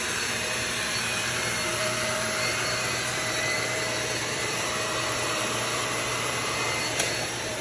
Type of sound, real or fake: fake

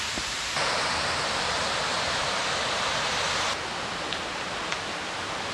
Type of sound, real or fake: real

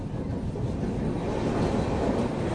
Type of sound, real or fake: real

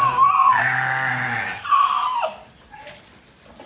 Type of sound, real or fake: real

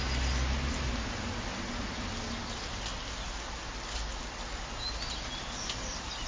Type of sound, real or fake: real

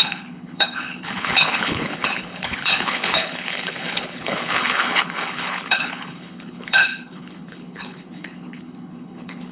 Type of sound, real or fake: fake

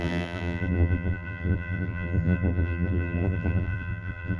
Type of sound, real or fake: fake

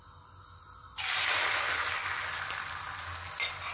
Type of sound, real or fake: real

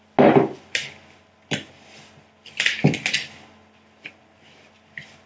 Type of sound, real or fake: real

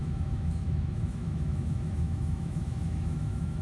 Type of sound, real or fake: fake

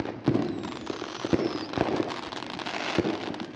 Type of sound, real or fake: real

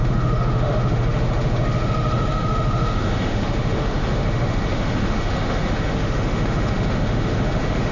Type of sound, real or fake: fake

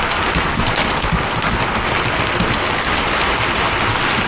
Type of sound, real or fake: real